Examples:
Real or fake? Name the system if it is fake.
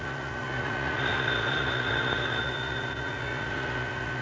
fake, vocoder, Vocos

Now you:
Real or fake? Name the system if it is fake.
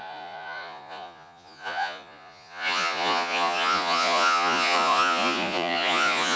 fake, vocoder, Vocos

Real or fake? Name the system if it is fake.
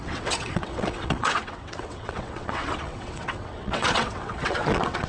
fake, vocoder, WaveNeXt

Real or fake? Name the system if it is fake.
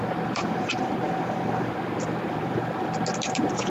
fake, vocoder, BigVGAN v2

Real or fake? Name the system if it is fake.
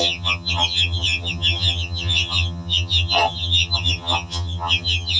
fake, vocoder, HiFi-GAN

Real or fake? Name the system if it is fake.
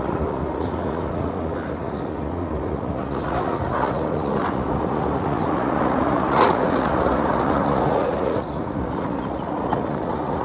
fake, vocoder, Vocos